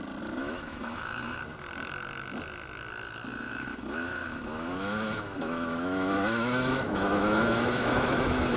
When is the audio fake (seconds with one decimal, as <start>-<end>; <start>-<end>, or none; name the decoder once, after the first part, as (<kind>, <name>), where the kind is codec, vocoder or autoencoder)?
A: 0.4-1.4 (autoencoder, DAC-VAE); 3.3-8.6